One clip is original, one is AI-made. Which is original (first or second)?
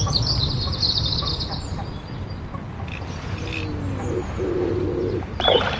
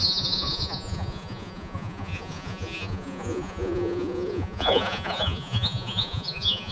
first